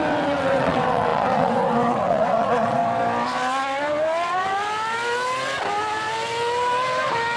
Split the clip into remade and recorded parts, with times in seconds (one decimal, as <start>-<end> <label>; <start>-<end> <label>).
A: 0.0-2.8 remade; 2.8-7.4 recorded